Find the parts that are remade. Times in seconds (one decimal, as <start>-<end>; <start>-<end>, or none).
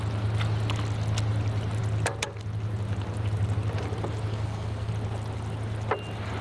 4.3-4.9